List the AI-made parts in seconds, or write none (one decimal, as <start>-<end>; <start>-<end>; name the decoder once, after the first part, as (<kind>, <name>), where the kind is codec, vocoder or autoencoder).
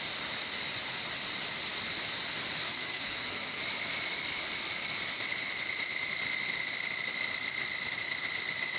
2.7-3.6 (codec, SNAC)